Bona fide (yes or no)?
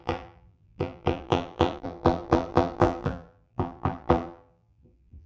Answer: no